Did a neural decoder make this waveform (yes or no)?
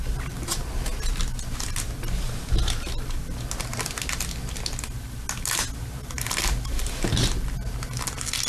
no